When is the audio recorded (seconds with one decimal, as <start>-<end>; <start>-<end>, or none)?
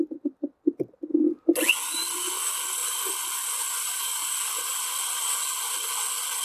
0.0-6.4